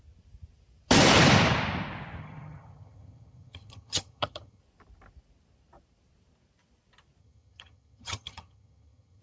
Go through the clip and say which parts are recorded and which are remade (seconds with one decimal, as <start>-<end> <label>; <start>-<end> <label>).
0.0-2.2 recorded; 2.2-4.6 remade; 4.6-7.2 recorded; 7.2-9.2 remade